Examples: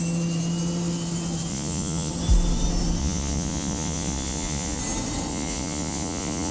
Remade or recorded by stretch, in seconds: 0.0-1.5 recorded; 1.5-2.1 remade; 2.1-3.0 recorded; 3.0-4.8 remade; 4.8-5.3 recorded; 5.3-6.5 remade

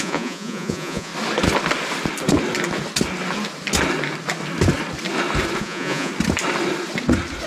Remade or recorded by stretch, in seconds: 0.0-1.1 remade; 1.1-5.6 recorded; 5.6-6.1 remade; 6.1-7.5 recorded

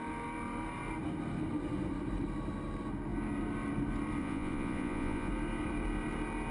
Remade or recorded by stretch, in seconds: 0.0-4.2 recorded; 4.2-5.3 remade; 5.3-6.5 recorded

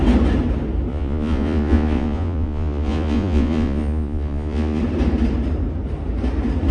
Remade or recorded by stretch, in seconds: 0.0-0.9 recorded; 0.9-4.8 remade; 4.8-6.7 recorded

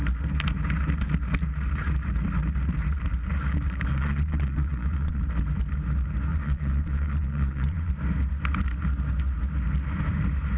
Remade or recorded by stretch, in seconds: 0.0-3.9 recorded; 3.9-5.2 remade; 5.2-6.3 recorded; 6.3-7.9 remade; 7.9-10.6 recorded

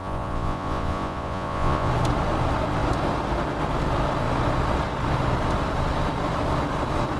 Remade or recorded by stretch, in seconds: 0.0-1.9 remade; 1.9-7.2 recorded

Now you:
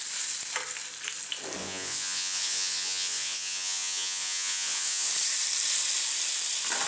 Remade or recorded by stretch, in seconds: 0.0-1.6 recorded; 1.6-5.1 remade; 5.1-6.9 recorded